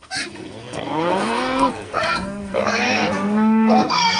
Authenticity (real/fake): fake